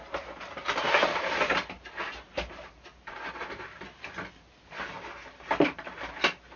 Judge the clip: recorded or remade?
recorded